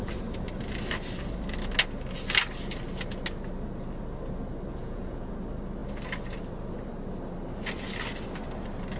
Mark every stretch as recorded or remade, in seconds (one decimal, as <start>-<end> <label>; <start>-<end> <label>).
0.0-4.7 recorded; 4.7-5.3 remade; 5.3-9.0 recorded